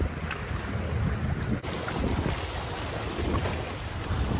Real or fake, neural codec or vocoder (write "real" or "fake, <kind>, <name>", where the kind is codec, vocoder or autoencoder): real